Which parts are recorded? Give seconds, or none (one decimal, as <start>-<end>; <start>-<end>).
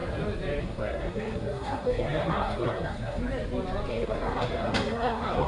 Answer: 0.0-0.6; 3.2-3.9